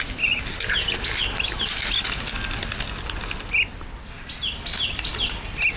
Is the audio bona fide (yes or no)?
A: yes